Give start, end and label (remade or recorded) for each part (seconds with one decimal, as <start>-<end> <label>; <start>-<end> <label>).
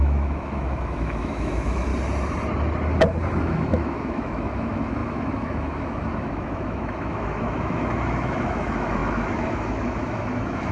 0.0-1.9 remade; 1.9-3.4 recorded; 3.4-10.7 remade